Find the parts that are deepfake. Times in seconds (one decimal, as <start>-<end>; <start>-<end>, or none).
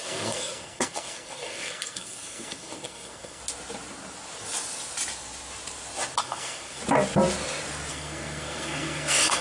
0.0-3.4; 6.2-6.8; 7.9-9.4